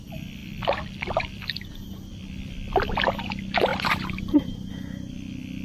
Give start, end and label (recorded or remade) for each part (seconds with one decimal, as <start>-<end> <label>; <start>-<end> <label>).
0.0-0.4 recorded; 0.4-3.3 remade; 3.3-3.7 recorded; 3.7-4.7 remade; 4.7-5.6 recorded